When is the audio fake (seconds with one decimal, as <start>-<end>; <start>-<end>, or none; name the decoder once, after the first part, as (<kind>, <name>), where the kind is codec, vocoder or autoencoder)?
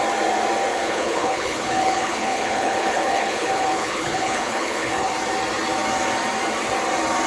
0.7-5.1 (codec, HILCodec)